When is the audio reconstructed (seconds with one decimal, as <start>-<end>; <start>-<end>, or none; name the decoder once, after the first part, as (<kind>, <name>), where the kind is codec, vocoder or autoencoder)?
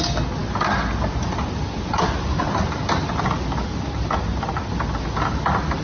none